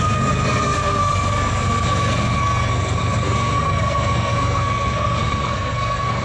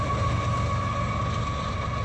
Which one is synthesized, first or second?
first